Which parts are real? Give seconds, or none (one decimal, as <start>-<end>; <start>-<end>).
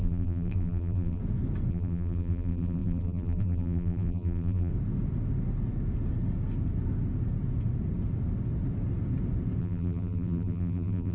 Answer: 1.2-1.7; 4.7-9.6